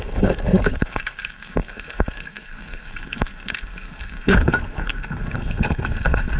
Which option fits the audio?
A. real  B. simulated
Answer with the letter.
B